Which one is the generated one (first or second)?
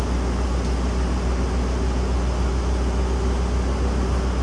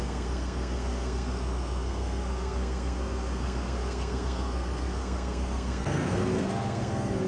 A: second